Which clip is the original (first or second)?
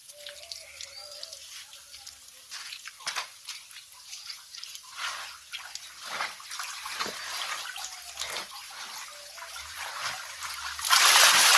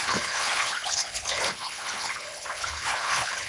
first